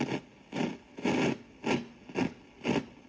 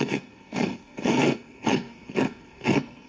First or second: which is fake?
second